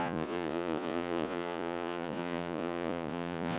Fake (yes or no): yes